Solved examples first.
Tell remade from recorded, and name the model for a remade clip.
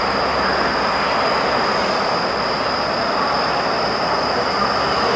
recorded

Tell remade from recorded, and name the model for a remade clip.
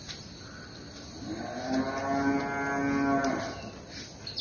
recorded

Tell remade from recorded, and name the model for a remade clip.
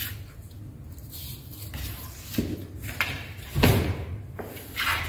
recorded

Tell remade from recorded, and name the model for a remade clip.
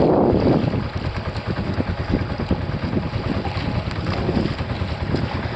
recorded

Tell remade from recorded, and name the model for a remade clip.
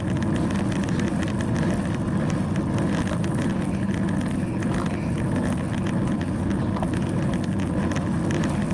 recorded